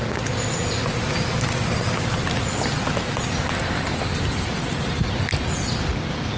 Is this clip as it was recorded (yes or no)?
yes